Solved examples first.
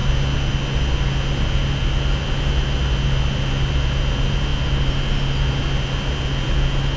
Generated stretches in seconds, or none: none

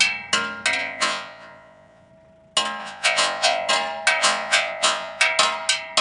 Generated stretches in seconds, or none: 0.8-2.1 (vocoder, Vocos); 2.8-3.7; 4.2-5.2

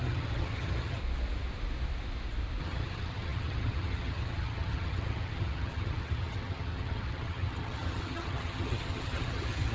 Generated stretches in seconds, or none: 0.0-1.0 (vocoder, HiFi-GAN); 2.6-9.7